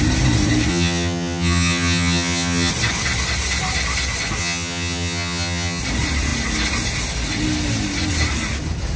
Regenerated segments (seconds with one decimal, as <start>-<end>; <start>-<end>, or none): 0.7-2.7; 4.4-5.8